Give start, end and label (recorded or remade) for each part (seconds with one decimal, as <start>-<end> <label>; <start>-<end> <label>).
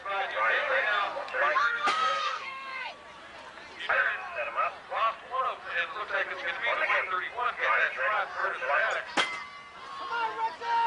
0.0-1.6 recorded; 1.6-2.9 remade; 2.9-10.9 recorded